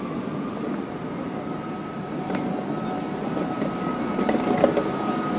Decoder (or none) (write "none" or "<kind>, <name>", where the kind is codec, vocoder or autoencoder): none